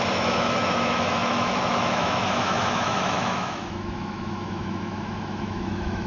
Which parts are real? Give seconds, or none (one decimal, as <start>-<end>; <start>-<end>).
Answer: none